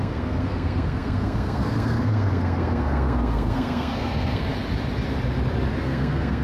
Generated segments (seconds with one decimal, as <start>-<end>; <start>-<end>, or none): 0.0-4.5; 5.8-6.4